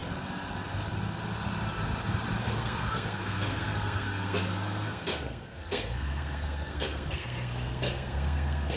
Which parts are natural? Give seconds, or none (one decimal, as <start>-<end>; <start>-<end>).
0.0-2.4